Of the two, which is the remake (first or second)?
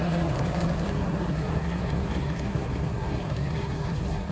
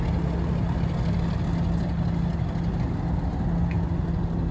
first